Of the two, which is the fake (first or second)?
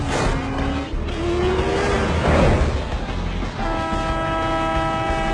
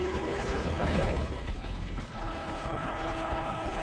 second